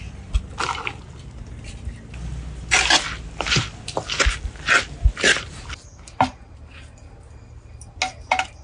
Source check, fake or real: real